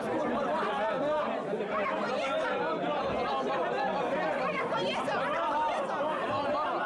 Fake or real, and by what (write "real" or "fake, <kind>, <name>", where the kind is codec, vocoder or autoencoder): real